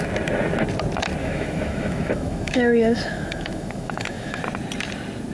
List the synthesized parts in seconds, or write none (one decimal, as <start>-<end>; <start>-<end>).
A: 1.2-4.4

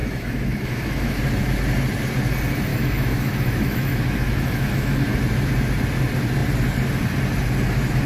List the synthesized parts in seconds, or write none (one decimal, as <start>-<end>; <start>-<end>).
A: 0.0-1.2; 2.7-5.2

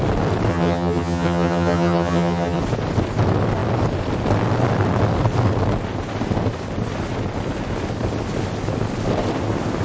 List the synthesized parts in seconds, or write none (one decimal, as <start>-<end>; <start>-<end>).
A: 0.5-2.6

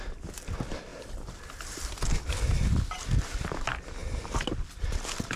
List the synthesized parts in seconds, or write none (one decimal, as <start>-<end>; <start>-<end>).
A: none

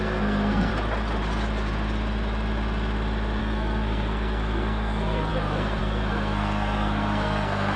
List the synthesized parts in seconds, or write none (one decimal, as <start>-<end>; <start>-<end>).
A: 0.0-0.7; 3.4-7.8

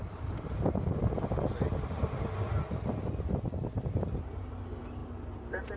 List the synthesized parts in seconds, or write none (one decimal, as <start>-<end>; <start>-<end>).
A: none

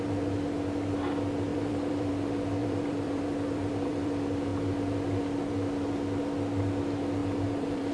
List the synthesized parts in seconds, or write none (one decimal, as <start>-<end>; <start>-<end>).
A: 1.5-2.1; 2.6-4.1; 7.2-7.9